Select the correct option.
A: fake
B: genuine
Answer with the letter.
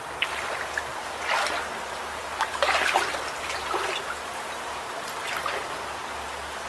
B